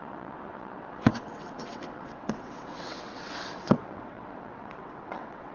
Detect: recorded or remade remade